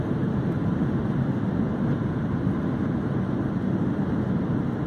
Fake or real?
real